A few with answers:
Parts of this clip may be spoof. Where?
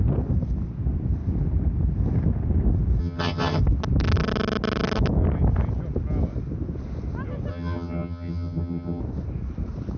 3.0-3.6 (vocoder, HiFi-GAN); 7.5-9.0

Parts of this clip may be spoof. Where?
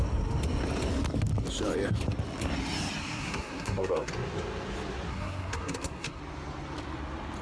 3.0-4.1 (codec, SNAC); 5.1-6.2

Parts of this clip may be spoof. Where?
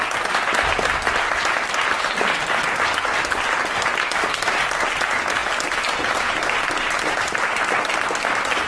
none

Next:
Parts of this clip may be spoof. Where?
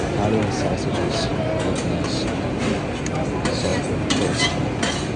none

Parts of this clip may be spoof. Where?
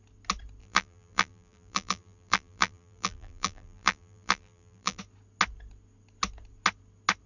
0.6-5.0 (vocoder, BigVGAN v2)